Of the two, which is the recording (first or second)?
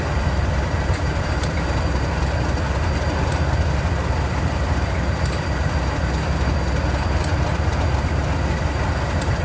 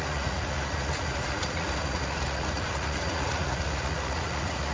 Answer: first